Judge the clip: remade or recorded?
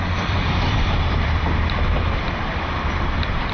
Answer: remade